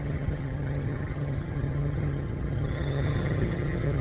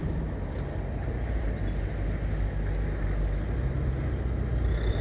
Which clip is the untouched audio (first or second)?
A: second